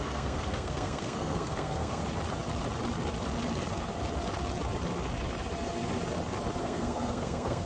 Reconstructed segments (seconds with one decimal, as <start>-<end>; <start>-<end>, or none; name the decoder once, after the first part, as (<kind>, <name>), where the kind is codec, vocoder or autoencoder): 0.0-2.0 (codec, SNAC); 6.6-7.7